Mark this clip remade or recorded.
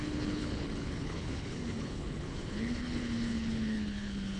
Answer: remade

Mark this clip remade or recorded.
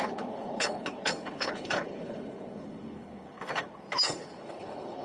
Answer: remade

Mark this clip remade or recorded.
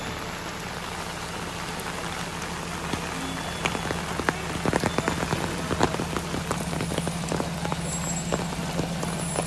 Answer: recorded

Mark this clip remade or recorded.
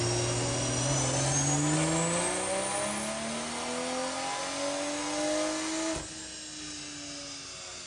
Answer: recorded